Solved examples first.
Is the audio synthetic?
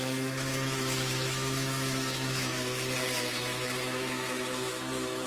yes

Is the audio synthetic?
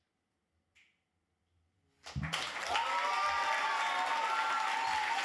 no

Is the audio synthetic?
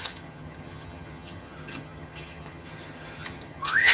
yes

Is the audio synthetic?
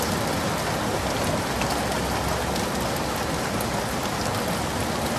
no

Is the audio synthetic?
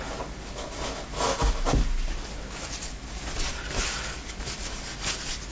no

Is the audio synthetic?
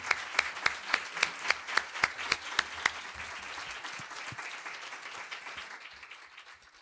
no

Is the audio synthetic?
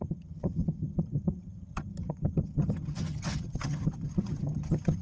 yes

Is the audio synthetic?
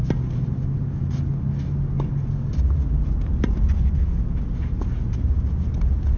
no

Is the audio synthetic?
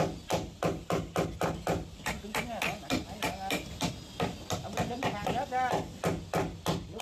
no